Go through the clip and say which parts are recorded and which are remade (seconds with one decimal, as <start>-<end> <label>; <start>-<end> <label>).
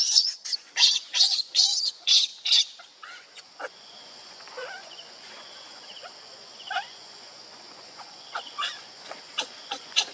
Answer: 0.0-2.3 remade; 2.3-2.8 recorded; 2.8-10.1 remade